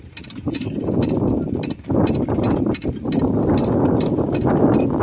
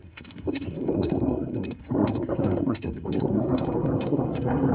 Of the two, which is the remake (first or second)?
second